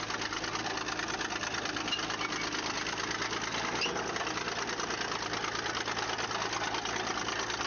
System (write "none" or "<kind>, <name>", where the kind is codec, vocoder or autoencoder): none